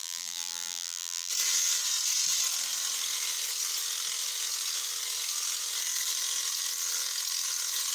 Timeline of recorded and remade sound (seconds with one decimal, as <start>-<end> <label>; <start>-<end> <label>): 0.0-1.3 remade; 1.3-7.9 recorded